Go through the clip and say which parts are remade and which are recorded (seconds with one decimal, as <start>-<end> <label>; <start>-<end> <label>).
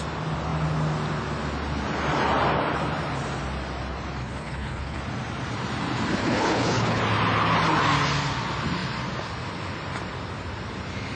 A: 0.0-4.2 recorded; 4.2-5.0 remade; 5.0-6.2 recorded; 6.2-7.0 remade; 7.0-11.2 recorded